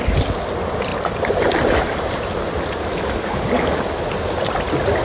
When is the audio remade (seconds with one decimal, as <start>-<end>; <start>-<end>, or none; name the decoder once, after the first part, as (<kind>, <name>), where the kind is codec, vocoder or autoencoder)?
none